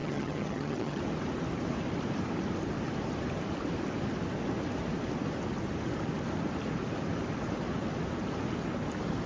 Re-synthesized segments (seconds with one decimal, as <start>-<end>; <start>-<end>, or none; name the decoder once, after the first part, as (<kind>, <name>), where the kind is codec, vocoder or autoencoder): 0.0-1.0 (vocoder, HiFi-GAN)